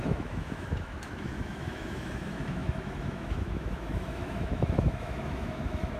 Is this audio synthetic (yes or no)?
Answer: yes